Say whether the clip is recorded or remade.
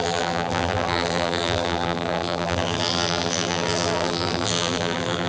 remade